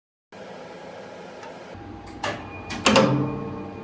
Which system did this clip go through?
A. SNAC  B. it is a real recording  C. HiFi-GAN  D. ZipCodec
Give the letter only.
B